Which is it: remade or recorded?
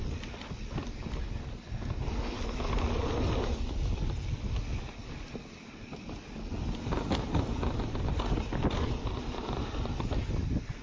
recorded